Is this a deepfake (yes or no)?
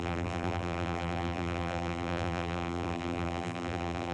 yes